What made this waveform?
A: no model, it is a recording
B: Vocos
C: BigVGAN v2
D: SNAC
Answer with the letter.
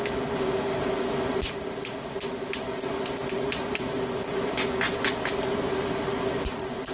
A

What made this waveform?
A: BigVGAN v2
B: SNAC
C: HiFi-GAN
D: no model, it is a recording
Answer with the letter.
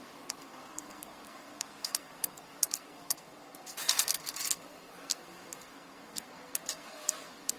B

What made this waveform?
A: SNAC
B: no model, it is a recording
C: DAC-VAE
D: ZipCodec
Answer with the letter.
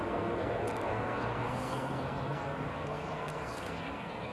A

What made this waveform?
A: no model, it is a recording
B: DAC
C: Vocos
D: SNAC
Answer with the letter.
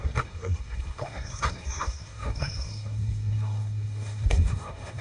D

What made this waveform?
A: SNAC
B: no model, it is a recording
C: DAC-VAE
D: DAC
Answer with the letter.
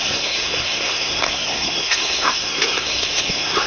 A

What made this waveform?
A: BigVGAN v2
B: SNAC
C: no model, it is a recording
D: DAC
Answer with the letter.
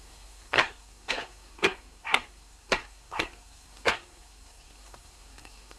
B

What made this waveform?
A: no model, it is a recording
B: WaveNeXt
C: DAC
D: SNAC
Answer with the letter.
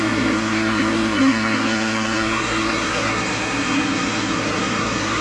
D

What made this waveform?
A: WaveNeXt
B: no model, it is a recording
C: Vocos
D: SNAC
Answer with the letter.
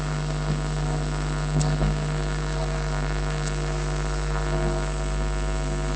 D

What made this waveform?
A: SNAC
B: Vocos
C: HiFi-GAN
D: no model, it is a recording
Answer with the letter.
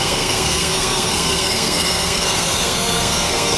A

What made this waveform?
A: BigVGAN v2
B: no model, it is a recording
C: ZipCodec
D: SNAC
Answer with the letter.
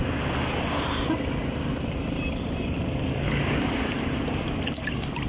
B